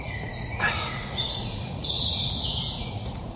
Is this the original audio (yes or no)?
no